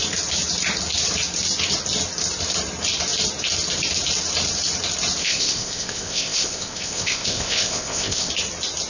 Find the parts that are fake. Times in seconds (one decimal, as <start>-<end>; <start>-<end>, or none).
5.2-8.3